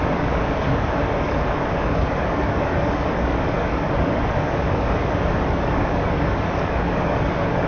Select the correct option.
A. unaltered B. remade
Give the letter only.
B